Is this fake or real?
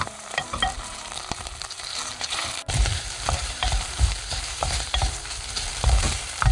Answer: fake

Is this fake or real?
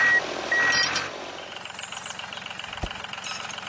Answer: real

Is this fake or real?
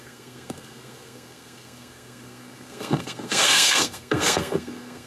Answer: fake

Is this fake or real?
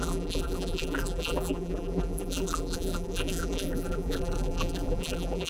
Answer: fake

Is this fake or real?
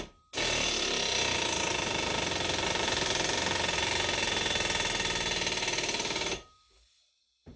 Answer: real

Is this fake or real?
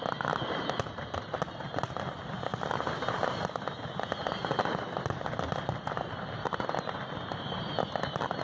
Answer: real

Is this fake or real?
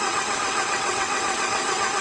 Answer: fake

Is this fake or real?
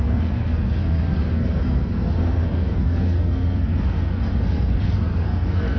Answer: fake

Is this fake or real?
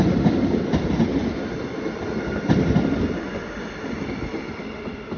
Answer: real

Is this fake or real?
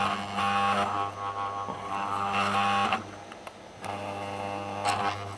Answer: real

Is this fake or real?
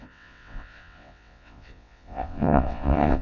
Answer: fake